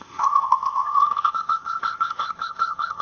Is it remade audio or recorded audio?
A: remade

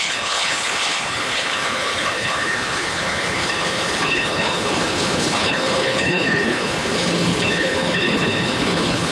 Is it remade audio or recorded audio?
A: remade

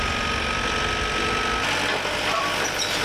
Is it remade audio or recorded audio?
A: recorded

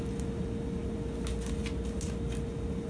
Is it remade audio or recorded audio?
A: recorded